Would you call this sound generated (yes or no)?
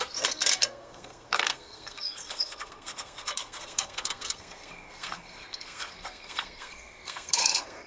yes